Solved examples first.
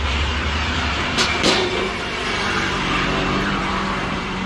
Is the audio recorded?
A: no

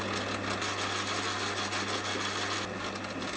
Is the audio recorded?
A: yes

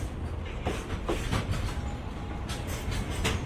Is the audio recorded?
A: yes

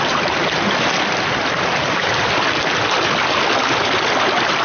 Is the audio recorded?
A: yes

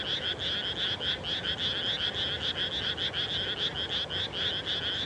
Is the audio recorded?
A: yes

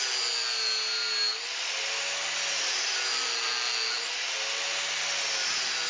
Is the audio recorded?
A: yes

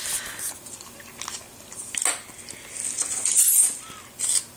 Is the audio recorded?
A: yes